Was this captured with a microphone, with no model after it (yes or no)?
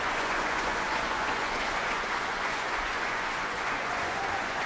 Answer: no